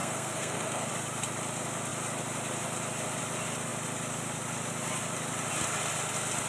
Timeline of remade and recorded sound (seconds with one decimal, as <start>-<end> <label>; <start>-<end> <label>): 0.0-0.9 remade; 0.9-6.5 recorded